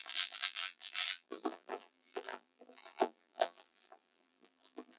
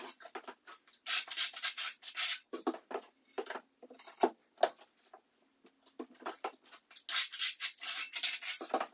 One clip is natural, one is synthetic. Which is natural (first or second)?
second